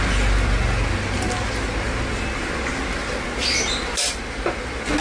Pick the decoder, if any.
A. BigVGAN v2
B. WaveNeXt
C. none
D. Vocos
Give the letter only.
C